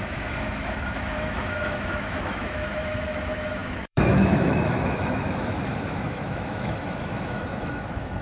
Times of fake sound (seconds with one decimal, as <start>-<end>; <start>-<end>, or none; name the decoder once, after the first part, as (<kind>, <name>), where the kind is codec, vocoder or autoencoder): 0.0-8.2 (autoencoder, DAC-VAE)